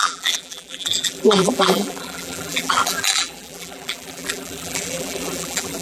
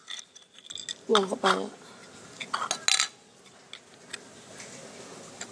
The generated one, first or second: first